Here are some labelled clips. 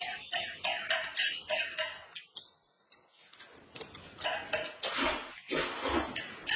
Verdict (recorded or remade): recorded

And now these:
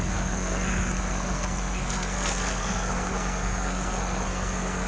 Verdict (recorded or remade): remade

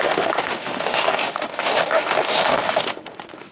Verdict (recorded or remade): remade